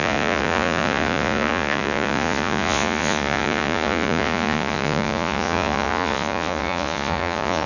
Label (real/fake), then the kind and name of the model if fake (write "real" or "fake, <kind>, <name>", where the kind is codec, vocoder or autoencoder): fake, vocoder, Vocos